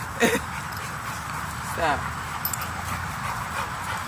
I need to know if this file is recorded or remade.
recorded